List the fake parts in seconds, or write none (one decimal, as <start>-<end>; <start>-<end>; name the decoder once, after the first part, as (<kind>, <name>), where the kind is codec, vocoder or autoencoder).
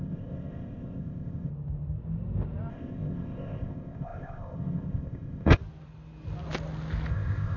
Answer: 0.0-1.5 (codec, ZipCodec); 2.7-5.6; 7.1-7.6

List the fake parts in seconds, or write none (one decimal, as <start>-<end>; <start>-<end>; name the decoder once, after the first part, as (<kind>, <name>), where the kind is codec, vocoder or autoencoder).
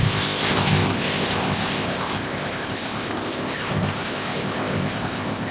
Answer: 0.0-5.5 (codec, ZipCodec)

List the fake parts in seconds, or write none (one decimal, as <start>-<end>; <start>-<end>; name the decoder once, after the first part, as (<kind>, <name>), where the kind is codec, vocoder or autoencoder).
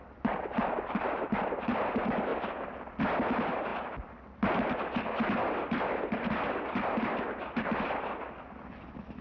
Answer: none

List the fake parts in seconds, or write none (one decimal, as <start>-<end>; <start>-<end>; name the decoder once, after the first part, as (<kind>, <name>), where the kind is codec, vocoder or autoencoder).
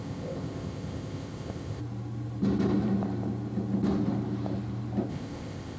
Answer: 0.0-1.8 (codec, ZipCodec); 5.1-5.8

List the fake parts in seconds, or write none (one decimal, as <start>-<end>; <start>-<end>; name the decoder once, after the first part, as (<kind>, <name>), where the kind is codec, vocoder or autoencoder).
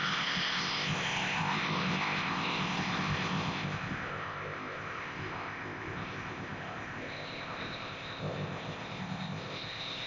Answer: 0.0-10.1 (codec, ZipCodec)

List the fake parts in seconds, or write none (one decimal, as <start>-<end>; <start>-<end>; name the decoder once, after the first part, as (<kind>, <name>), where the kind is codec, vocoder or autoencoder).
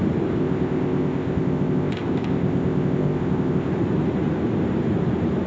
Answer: 0.4-3.7 (codec, ZipCodec)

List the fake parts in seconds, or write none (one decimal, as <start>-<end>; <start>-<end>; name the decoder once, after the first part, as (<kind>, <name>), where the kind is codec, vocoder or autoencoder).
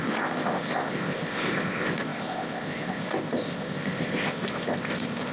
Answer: 0.0-5.3 (codec, ZipCodec)